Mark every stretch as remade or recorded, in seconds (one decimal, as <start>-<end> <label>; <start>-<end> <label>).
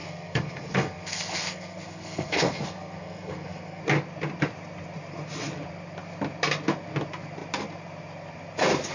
0.0-3.8 remade; 3.8-8.9 recorded